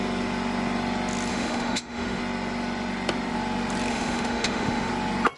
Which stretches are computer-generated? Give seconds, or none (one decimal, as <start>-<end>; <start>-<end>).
1.3-2.2; 3.9-4.9